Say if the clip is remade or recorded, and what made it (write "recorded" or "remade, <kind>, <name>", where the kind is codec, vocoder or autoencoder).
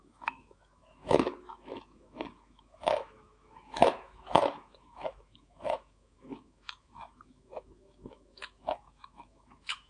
remade, autoencoder, DAC-VAE